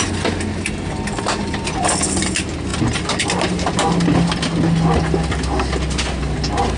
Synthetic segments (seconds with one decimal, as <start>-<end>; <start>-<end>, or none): none